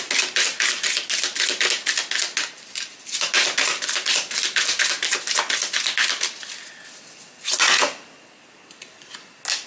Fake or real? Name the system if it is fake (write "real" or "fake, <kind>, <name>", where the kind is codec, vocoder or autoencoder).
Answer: real